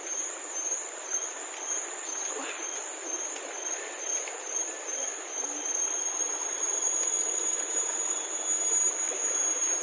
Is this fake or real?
fake